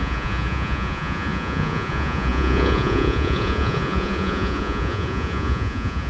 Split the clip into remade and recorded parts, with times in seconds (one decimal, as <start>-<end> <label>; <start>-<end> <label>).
0.0-6.1 remade